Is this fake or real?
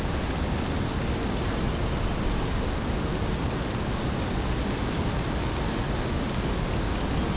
real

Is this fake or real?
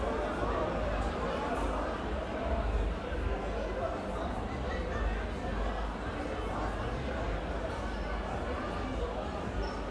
real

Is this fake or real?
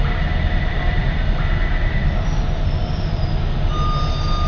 real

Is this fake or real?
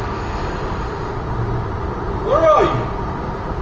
real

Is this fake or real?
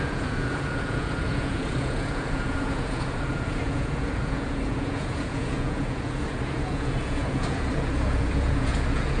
fake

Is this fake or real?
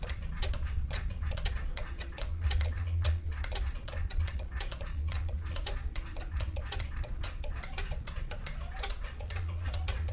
fake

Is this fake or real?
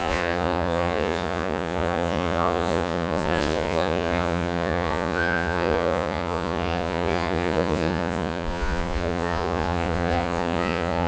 fake